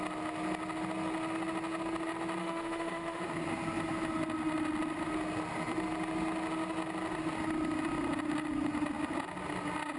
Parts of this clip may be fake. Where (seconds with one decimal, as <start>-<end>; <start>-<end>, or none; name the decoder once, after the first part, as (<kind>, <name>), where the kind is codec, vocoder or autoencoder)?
2.4-3.2 (autoencoder, DAC-VAE)